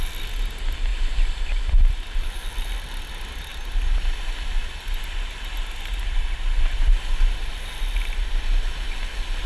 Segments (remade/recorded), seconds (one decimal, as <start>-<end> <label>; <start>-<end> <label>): 0.0-0.9 recorded; 0.9-3.1 remade; 3.1-9.5 recorded